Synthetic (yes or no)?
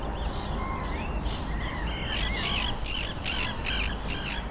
no